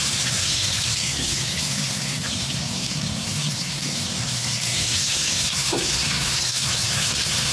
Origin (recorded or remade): remade